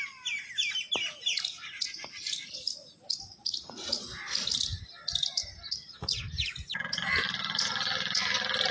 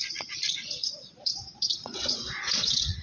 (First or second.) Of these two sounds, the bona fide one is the first